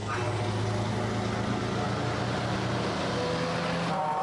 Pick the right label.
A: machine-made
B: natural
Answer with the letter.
B